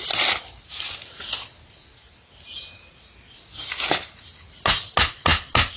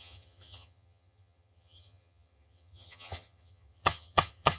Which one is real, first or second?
first